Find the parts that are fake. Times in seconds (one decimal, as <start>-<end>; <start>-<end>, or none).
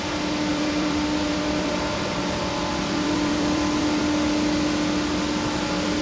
0.5-4.0